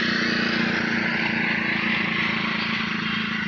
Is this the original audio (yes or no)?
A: yes